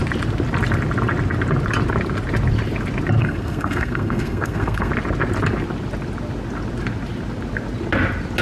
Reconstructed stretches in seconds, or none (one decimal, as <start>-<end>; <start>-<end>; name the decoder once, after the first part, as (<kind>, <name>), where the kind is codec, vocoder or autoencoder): 3.2-4.9 (codec, SNAC)

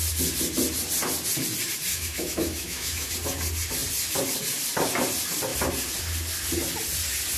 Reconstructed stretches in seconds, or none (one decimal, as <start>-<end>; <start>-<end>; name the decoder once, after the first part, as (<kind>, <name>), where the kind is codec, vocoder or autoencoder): 1.9-3.1 (autoencoder, DAC-VAE)

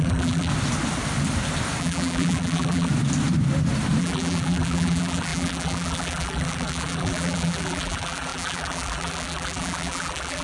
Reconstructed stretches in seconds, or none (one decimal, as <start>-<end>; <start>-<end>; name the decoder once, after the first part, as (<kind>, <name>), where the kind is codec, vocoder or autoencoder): 0.0-0.5 (vocoder, BigVGAN v2); 1.8-2.9; 4.0-10.4